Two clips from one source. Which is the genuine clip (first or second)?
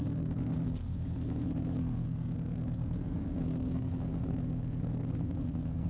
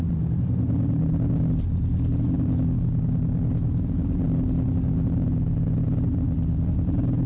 second